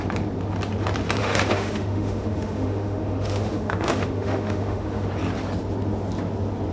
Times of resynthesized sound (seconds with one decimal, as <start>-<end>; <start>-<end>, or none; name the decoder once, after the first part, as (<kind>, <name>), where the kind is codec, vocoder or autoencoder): 1.2-5.1 (autoencoder, DAC-VAE)

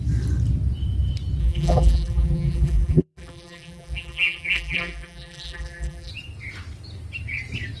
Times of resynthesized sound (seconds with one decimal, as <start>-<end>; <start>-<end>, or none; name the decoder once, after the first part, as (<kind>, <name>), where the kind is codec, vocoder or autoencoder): 1.4-6.1 (vocoder, BigVGAN v2)

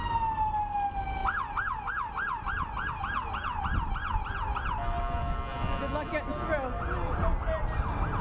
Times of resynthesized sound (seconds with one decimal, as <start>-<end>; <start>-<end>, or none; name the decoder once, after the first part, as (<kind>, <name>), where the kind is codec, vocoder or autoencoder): none